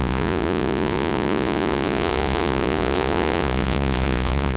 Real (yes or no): no